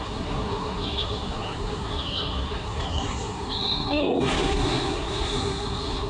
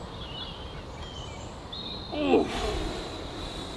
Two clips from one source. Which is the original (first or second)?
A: second